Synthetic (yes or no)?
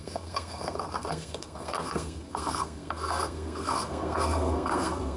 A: yes